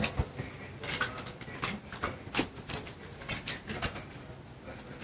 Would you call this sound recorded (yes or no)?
yes